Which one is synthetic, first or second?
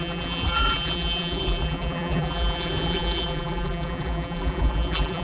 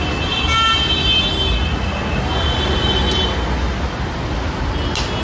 first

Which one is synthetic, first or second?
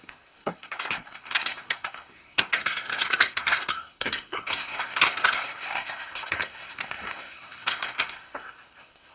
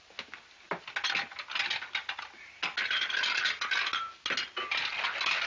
first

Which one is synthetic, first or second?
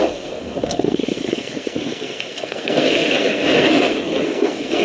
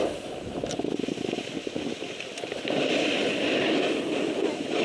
first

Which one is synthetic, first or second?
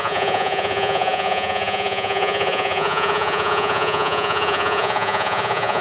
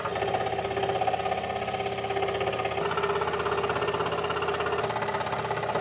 first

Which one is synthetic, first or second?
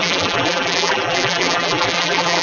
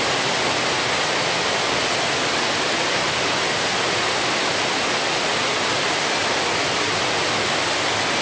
first